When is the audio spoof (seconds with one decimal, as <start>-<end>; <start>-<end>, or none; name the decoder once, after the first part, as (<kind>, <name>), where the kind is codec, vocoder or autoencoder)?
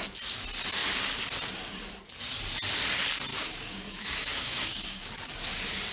3.3-5.3 (codec, DAC)